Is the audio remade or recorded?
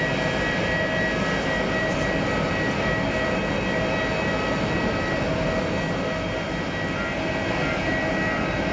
recorded